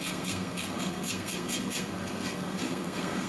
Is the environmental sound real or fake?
fake